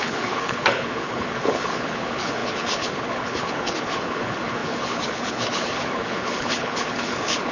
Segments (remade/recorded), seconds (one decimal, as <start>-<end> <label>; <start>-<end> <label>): 0.0-7.5 remade